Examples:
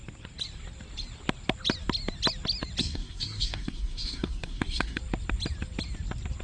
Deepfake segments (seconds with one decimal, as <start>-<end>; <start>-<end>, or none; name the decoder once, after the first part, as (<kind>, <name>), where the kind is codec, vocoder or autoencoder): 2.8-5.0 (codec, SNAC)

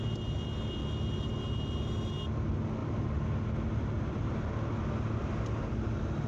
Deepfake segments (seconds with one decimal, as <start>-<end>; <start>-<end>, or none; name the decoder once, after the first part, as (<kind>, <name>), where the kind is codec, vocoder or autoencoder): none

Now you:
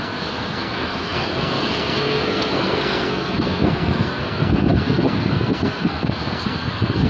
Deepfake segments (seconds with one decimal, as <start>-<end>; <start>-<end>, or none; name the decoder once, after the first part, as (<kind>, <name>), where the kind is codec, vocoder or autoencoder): 0.0-7.1 (codec, SNAC)

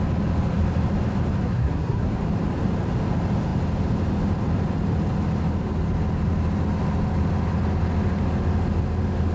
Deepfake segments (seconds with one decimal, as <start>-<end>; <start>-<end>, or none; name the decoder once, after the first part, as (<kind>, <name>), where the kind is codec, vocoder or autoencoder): 1.4-2.2 (codec, SNAC)

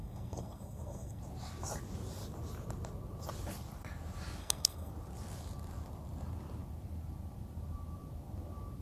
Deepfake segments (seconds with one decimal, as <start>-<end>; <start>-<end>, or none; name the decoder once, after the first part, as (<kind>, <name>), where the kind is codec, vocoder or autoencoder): 0.0-1.2 (codec, SNAC); 4.4-4.9

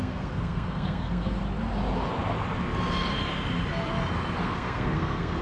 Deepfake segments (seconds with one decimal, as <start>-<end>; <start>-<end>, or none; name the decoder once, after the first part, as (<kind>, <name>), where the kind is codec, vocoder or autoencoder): 0.0-1.4 (codec, SNAC); 4.4-5.4